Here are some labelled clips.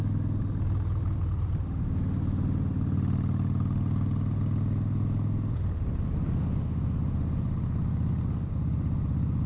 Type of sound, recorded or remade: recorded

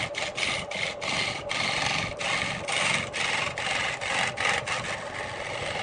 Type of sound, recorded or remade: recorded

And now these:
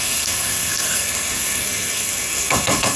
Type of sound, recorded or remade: remade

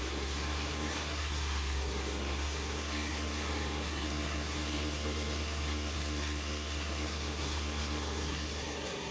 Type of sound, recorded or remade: remade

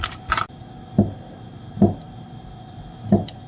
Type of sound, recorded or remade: recorded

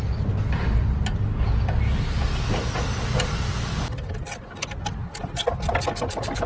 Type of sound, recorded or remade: recorded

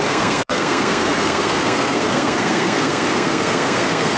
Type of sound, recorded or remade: remade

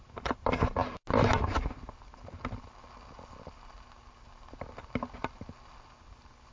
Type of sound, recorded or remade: recorded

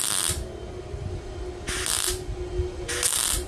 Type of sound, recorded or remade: recorded